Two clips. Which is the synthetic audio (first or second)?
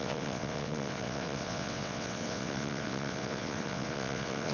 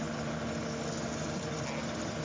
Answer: first